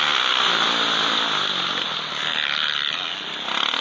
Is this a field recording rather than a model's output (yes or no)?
yes